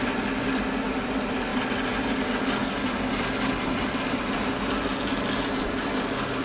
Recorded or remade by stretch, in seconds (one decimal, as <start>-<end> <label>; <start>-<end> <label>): 0.0-6.4 recorded